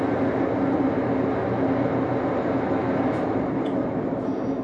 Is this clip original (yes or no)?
yes